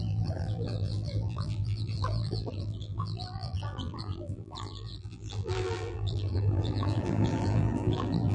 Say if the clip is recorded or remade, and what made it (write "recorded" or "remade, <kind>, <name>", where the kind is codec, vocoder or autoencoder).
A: remade, vocoder, BigVGAN v2